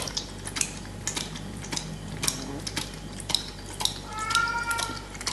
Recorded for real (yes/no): yes